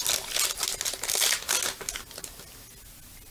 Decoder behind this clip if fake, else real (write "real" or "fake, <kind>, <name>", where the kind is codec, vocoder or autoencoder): real